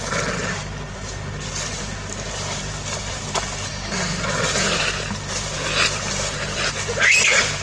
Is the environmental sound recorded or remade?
recorded